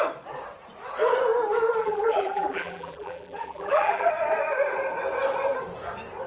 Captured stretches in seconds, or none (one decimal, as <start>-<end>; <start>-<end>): 0.0-1.8; 4.1-6.3